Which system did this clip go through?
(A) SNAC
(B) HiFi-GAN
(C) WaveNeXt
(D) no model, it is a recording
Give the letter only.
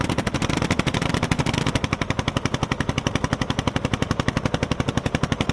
D